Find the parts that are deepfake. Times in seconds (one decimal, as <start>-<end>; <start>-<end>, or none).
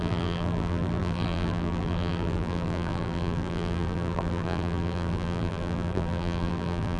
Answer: 0.0-7.0